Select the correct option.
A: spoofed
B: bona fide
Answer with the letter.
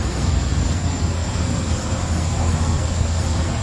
A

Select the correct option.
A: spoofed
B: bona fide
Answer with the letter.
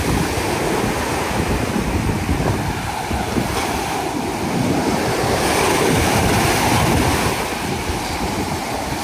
B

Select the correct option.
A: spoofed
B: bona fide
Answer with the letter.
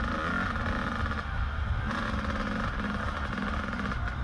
B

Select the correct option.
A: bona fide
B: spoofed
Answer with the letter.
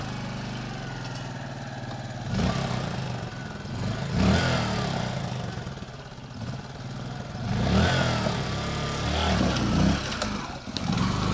A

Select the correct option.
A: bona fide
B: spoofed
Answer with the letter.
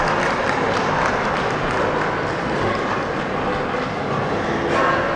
A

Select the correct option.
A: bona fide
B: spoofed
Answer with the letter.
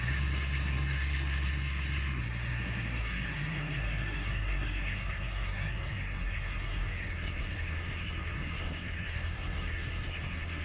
B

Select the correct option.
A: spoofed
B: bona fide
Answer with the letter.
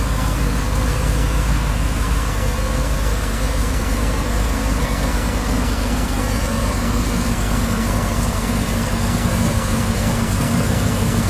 A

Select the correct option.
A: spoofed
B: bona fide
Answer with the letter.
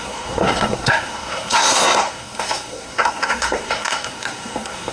A